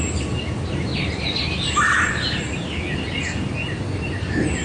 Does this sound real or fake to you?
real